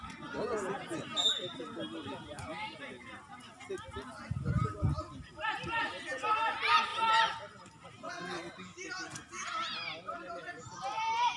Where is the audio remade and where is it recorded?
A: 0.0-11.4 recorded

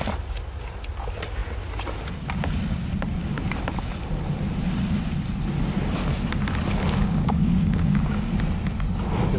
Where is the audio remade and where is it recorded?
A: 0.0-7.0 recorded; 7.0-8.3 remade; 8.3-9.4 recorded

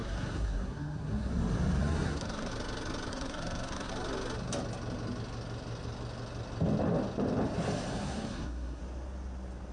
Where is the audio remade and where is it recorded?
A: 0.0-1.3 remade; 1.3-1.8 recorded; 1.8-2.5 remade; 2.5-3.1 recorded; 3.1-3.9 remade; 3.9-7.9 recorded; 7.9-8.8 remade; 8.8-9.7 recorded

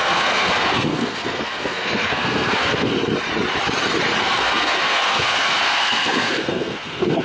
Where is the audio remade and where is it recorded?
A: 0.0-2.9 remade; 2.9-4.2 recorded; 4.2-7.2 remade

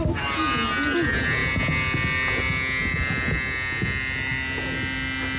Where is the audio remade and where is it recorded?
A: 0.0-5.4 recorded

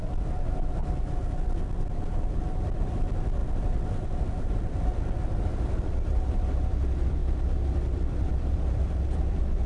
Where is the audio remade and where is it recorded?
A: 0.0-1.2 remade; 1.2-1.9 recorded; 1.9-3.4 remade; 3.4-4.4 recorded; 4.4-7.2 remade; 7.2-8.1 recorded; 8.1-9.7 remade

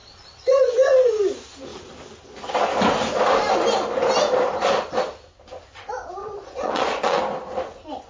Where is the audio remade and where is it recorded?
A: 0.0-1.1 remade; 1.1-6.2 recorded; 6.2-7.2 remade; 7.2-8.1 recorded

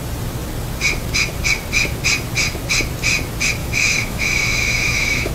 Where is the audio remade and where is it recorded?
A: 0.0-3.6 recorded; 3.6-5.3 remade